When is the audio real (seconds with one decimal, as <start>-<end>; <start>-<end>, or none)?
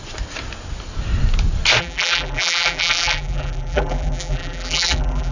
0.0-1.8